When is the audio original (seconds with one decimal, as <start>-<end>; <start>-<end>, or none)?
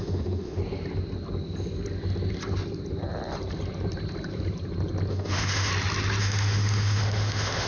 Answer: 0.6-5.1; 5.7-6.2